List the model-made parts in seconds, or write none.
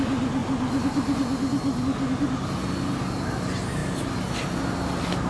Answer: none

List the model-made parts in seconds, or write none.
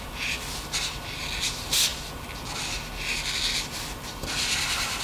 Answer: none